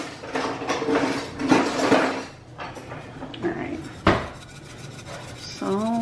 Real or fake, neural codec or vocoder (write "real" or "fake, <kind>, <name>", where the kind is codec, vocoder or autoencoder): real